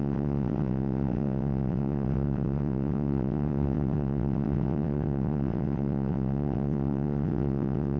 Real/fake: fake